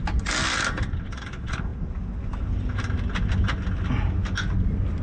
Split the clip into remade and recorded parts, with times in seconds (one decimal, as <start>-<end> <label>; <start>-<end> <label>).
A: 0.0-5.0 recorded